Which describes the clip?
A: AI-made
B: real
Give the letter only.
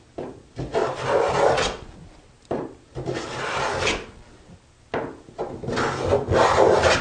B